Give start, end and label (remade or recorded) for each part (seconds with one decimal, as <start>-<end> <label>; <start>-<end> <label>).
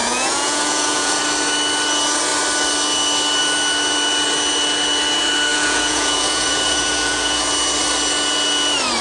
0.0-1.2 remade; 1.2-5.5 recorded; 5.5-7.4 remade; 7.4-9.0 recorded